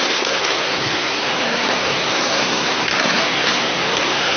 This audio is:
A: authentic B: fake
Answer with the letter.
B